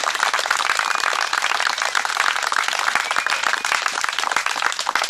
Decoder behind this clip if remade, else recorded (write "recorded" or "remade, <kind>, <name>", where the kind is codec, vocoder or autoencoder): recorded